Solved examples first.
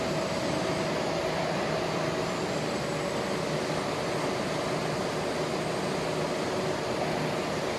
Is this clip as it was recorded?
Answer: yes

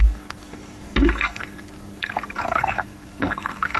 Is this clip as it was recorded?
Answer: no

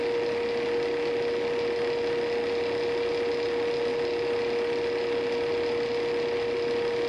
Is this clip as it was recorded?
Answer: yes